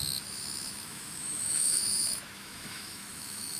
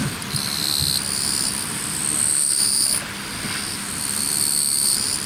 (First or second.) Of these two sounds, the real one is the second